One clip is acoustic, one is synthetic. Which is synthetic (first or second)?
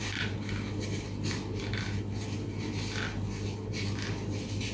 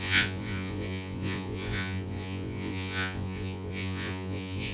second